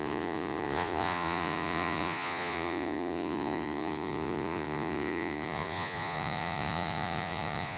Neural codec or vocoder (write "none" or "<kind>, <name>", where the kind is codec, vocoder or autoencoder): vocoder, Vocos